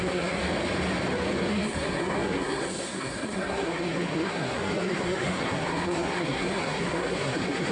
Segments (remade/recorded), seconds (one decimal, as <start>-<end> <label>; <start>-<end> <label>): 0.0-0.4 remade; 0.4-1.5 recorded; 1.5-7.7 remade